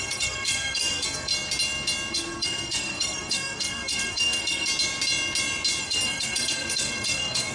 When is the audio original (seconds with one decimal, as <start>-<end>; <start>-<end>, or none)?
1.3-2.1; 4.7-5.8